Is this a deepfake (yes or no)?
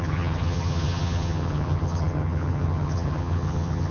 yes